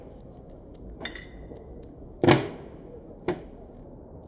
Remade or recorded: recorded